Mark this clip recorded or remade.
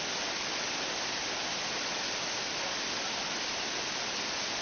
recorded